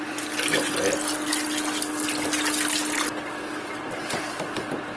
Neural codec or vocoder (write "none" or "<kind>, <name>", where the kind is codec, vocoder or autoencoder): none